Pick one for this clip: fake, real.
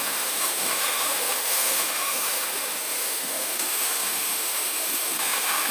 fake